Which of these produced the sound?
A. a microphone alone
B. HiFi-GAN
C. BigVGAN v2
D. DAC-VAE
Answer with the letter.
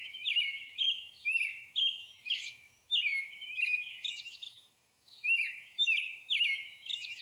D